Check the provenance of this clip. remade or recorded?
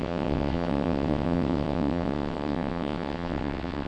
remade